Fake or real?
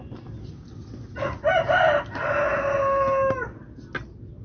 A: real